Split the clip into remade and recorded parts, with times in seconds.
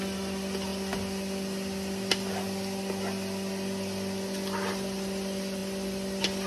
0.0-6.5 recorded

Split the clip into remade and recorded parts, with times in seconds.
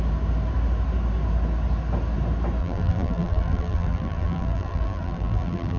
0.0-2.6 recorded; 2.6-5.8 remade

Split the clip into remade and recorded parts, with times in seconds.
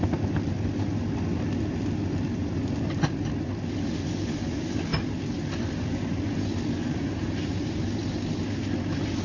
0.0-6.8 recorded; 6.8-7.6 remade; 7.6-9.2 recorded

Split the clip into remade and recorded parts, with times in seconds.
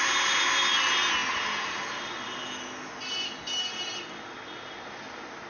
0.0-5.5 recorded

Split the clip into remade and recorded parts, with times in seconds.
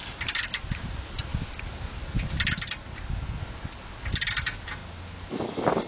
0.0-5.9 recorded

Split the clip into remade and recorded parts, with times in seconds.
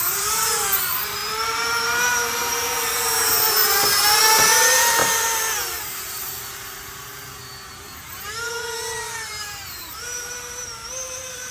0.0-7.4 remade; 7.4-8.5 recorded; 8.5-11.5 remade